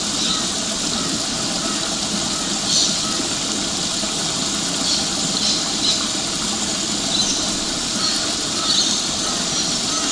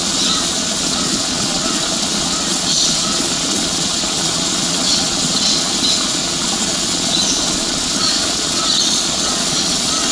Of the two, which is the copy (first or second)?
second